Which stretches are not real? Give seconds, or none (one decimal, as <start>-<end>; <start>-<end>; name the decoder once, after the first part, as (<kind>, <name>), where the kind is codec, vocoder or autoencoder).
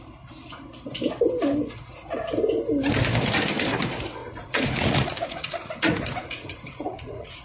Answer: 4.2-7.4 (vocoder, Vocos)